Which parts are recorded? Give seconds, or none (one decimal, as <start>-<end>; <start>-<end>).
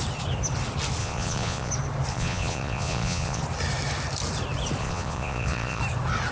0.0-1.0; 1.7-2.1; 3.4-4.8; 5.8-6.3